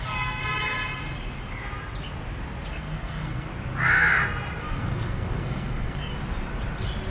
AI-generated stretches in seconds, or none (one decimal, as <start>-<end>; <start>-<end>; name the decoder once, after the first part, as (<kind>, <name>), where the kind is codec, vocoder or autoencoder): 0.0-0.4 (codec, SNAC); 2.7-3.5; 4.6-6.1